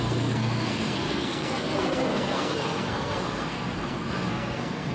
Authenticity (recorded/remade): remade